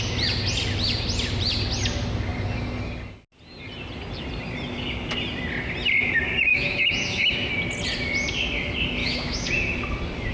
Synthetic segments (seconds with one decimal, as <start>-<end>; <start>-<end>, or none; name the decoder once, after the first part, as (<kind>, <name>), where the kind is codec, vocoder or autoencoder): 6.5-7.5 (autoencoder, DAC-VAE); 9.0-9.5